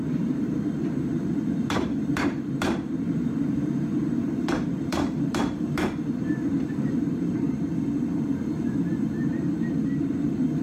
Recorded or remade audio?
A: remade